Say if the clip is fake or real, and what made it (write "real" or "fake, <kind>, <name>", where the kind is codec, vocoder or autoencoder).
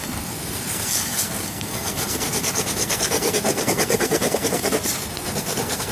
fake, codec, SNAC